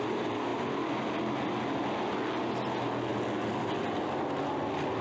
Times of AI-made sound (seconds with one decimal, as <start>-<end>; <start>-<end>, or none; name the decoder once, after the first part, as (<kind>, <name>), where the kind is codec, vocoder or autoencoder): none